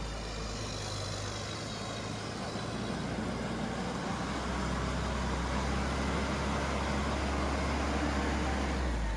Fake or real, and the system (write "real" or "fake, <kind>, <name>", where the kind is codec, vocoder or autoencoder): real